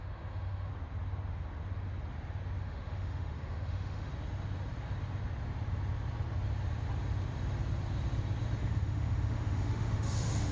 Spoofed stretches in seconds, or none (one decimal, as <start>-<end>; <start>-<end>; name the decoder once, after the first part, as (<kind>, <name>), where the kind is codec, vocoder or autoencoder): 0.0-0.7 (autoencoder, DAC-VAE); 2.6-4.1; 8.6-10.5